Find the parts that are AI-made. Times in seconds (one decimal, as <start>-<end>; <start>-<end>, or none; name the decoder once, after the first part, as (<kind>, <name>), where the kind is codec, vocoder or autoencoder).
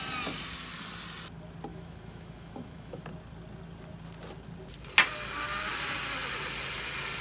1.7-3.0 (autoencoder, DAC-VAE)